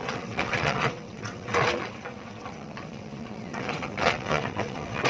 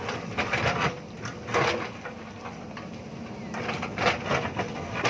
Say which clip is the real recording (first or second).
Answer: second